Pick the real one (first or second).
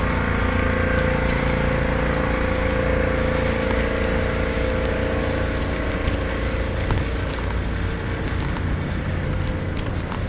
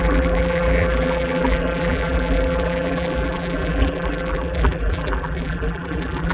first